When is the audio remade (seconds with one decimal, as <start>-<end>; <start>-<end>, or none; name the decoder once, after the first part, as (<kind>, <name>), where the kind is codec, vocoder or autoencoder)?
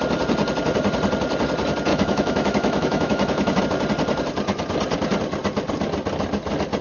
1.9-3.6 (autoencoder, DAC-VAE)